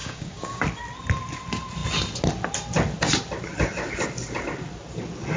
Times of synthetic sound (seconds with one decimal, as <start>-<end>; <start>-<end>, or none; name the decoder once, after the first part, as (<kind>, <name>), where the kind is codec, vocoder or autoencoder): 0.0-0.6 (codec, DAC)